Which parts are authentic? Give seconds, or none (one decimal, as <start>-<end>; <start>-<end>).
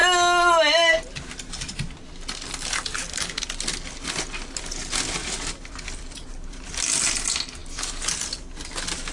0.0-5.2; 7.1-9.1